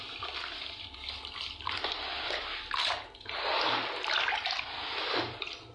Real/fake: real